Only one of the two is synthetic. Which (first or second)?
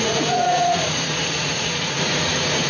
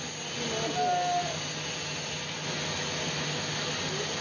first